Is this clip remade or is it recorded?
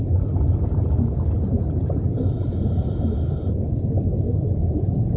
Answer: recorded